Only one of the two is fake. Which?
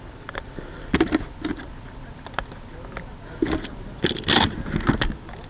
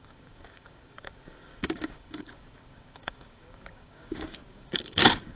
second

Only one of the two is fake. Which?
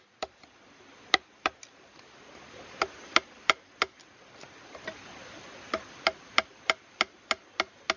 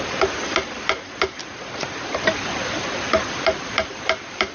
second